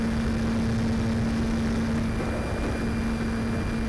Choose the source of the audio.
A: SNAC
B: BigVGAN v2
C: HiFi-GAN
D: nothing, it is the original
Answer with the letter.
D